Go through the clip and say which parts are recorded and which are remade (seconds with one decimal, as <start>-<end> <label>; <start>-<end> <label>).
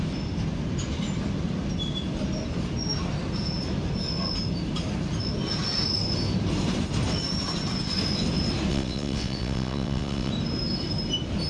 0.0-8.7 recorded; 8.7-10.3 remade; 10.3-11.5 recorded